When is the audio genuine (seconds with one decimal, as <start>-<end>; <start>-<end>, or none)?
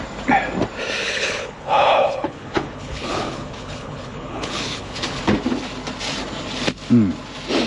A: 0.0-1.0; 5.2-7.7